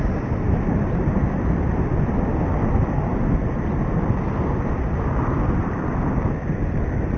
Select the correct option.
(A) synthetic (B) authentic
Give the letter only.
A